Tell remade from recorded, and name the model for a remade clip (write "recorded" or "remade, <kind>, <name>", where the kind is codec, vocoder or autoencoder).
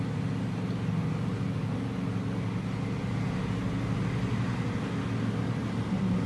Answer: recorded